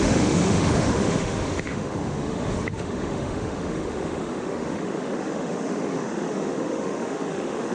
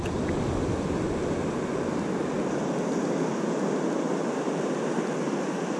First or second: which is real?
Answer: second